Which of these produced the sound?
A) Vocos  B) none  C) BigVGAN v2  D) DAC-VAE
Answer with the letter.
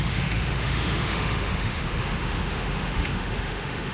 D